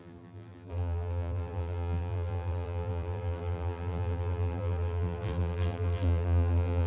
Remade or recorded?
remade